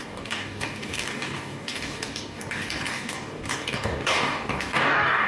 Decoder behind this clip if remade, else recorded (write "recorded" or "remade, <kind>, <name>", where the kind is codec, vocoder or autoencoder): remade, codec, DAC